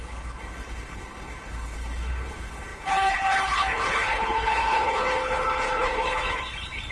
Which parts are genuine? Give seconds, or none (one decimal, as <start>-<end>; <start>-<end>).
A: none